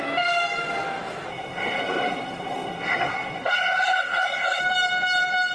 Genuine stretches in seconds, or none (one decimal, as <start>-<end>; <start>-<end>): 0.0-1.3; 4.6-5.5